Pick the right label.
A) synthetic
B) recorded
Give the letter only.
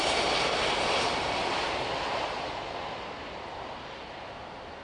B